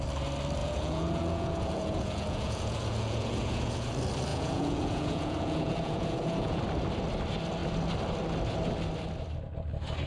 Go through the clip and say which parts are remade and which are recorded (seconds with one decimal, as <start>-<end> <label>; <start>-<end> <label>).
0.0-0.6 recorded; 0.6-3.9 remade; 3.9-4.3 recorded; 4.3-6.6 remade; 6.6-10.1 recorded